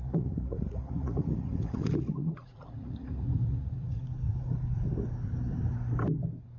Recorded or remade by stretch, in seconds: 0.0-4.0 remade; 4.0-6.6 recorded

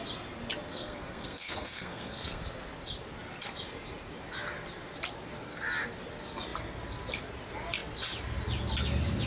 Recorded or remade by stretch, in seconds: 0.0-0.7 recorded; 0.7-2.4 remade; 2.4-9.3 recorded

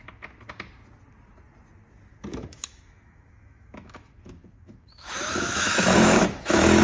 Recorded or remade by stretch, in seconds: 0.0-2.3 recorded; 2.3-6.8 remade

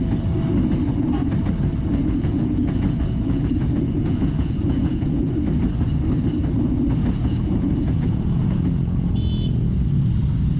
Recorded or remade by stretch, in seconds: 0.0-1.9 recorded; 1.9-5.3 remade; 5.3-7.2 recorded; 7.2-9.1 remade; 9.1-10.6 recorded

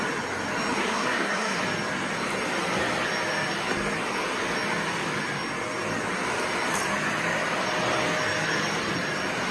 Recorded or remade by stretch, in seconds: 0.0-0.8 recorded; 0.8-1.6 remade; 1.6-9.5 recorded

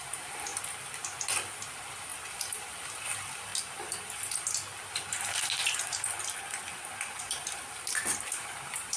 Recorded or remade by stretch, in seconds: 0.0-0.5 remade; 0.5-1.7 recorded; 1.7-3.5 remade; 3.5-7.2 recorded; 7.2-9.0 remade

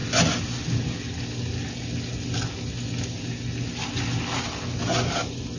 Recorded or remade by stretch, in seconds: 0.0-5.6 recorded

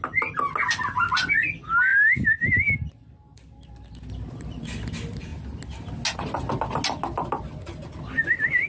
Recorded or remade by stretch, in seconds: 0.0-8.7 recorded